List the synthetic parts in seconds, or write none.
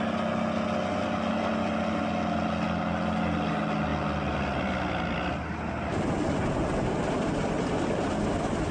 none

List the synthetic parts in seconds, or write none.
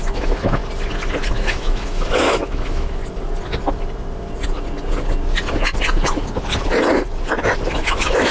0.0-0.6 (autoencoder, DAC-VAE); 1.3-3.0; 7.7-8.3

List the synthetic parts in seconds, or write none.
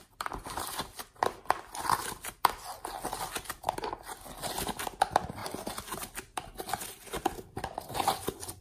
none